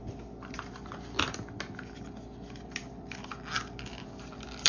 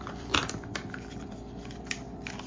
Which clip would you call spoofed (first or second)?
second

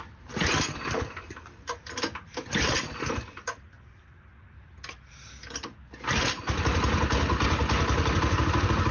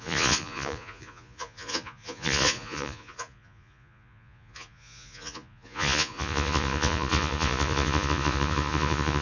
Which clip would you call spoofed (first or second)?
second